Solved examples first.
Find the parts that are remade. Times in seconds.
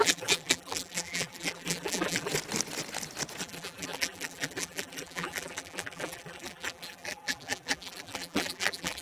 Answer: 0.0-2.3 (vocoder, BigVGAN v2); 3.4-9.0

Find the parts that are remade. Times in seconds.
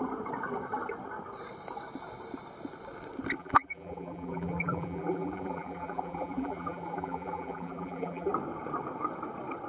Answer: 3.4-8.3 (vocoder, BigVGAN v2)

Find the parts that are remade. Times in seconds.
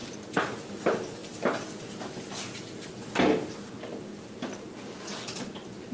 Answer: none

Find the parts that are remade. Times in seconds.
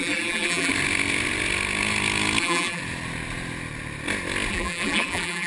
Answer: 0.0-0.7 (vocoder, BigVGAN v2); 2.4-2.8; 4.5-5.5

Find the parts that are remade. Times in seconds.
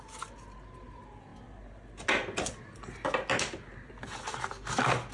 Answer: none